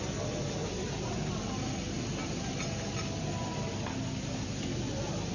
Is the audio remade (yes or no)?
no